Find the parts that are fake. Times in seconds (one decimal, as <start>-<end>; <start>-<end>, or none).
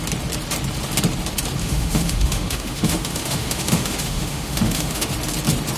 1.6-5.1